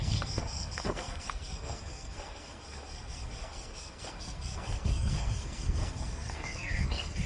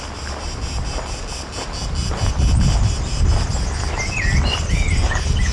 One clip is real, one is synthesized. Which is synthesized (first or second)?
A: first